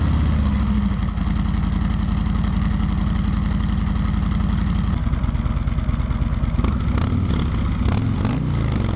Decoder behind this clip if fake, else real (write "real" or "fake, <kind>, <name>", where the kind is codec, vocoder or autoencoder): real